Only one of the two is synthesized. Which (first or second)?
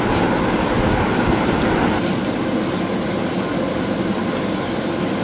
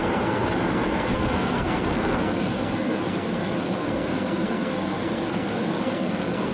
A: second